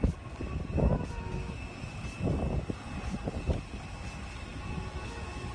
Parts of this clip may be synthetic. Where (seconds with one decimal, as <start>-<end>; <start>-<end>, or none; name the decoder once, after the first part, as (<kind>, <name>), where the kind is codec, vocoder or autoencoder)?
none